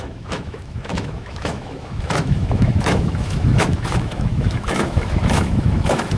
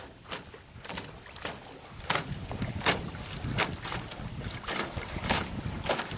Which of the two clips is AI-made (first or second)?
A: first